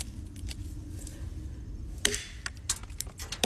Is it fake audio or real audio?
real